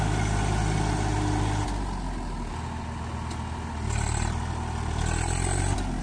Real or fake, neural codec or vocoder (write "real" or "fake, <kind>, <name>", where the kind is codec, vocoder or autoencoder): real